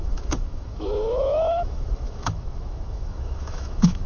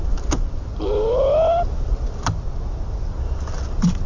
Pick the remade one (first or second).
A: first